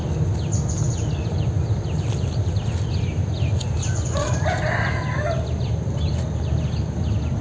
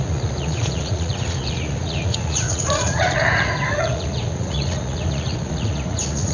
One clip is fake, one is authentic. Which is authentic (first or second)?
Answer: first